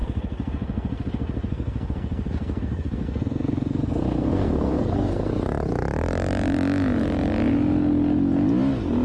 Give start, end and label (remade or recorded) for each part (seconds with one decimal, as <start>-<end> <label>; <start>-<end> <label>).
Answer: 0.0-5.3 remade; 5.3-9.0 recorded

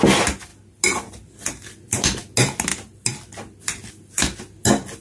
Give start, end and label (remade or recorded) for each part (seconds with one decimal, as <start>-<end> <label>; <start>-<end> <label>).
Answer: 0.0-5.0 recorded

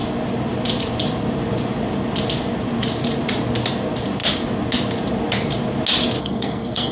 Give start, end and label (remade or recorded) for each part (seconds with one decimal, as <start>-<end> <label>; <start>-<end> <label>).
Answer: 0.0-6.2 recorded; 6.2-6.9 remade

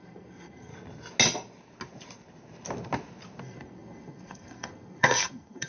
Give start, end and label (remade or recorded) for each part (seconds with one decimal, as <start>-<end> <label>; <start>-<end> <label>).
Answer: 0.0-0.7 remade; 0.7-3.4 recorded; 3.4-5.7 remade